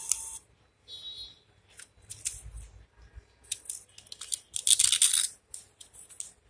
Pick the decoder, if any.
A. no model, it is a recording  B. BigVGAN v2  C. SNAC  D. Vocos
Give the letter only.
A